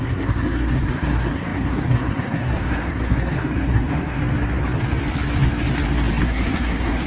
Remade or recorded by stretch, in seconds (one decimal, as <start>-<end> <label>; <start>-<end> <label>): 0.0-4.2 remade; 4.2-6.2 recorded; 6.2-7.1 remade